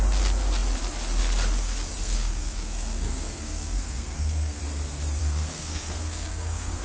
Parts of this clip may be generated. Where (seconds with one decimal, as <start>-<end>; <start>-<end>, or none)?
2.0-4.6; 5.2-6.8